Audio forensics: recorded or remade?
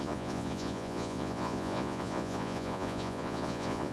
remade